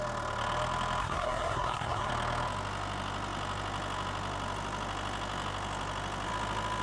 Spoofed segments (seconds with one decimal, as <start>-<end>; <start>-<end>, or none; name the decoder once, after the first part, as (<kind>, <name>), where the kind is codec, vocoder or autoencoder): 1.0-2.1 (codec, SNAC)